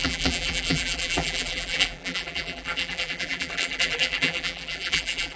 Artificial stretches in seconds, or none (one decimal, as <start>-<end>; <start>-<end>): 0.0-5.4